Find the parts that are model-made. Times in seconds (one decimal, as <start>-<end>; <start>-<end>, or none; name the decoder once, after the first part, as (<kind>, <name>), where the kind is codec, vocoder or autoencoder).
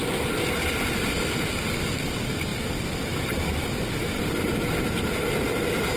none